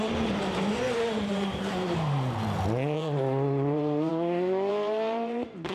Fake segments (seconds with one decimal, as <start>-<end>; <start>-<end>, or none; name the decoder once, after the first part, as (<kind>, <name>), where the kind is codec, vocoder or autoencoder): 0.0-4.1 (vocoder, BigVGAN v2); 4.7-5.7